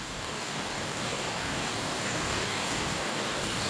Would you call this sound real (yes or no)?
no